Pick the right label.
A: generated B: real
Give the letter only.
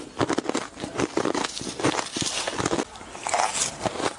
B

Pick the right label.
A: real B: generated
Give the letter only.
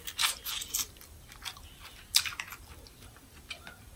A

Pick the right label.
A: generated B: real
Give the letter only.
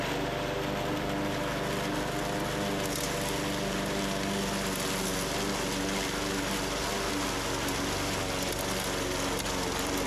B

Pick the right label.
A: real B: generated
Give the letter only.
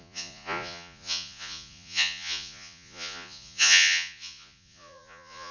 B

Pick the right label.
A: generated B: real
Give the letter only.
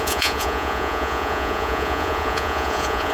A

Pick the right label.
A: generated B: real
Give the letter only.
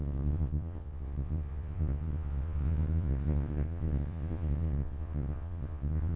A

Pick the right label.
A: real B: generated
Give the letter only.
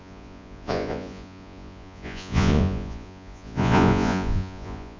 B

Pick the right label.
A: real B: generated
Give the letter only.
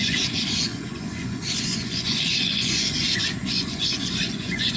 B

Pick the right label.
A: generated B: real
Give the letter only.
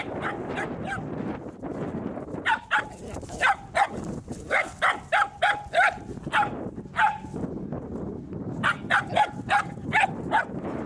B